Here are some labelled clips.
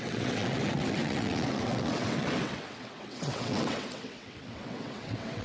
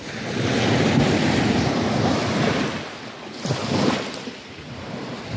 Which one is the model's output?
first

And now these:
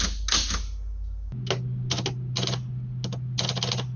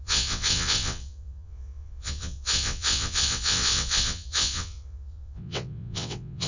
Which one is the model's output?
second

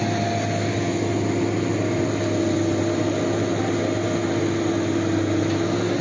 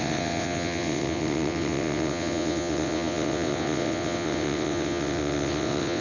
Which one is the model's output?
second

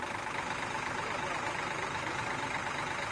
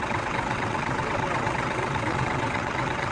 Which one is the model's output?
second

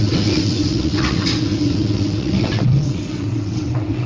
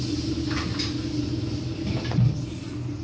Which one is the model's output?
first